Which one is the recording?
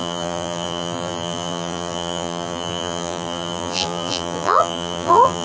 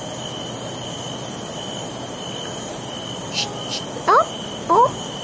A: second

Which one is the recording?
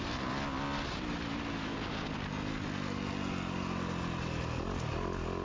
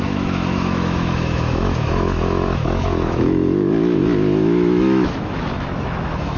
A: first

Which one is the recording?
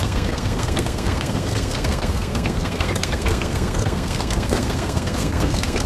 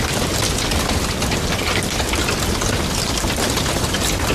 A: second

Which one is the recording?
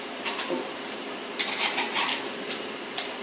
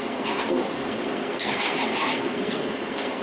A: first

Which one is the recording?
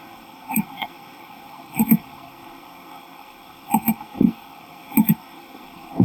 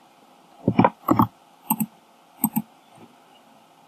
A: second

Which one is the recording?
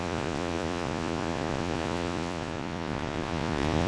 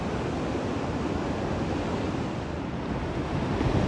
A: second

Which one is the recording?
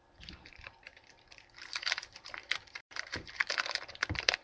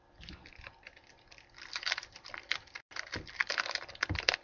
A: second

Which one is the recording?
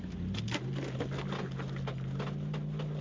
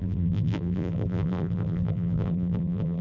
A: first